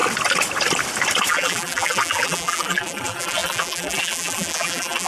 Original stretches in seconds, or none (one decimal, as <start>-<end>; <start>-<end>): 0.0-1.3